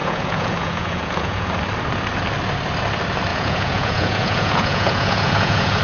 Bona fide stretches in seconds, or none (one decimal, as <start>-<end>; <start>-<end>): 1.5-3.3